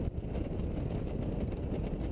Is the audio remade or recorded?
recorded